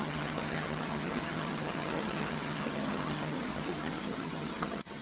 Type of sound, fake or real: fake